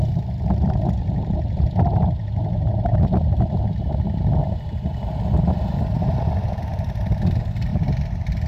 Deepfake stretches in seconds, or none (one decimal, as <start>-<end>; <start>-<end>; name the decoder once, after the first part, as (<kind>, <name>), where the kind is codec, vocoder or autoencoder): 6.7-7.2 (vocoder, BigVGAN v2); 7.7-8.5